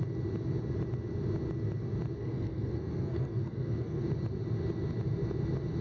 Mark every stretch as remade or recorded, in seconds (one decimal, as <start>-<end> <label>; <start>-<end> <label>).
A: 0.0-2.2 recorded; 2.2-4.0 remade; 4.0-5.8 recorded